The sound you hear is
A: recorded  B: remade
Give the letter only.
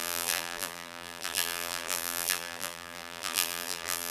B